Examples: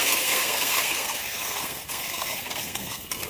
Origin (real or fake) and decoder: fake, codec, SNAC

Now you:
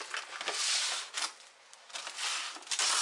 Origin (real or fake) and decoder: real